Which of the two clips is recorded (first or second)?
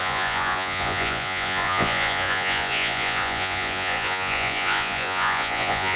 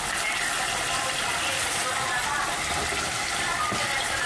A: second